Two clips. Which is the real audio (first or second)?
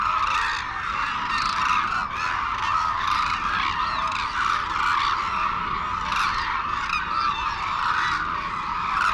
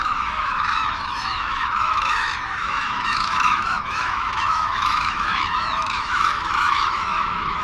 first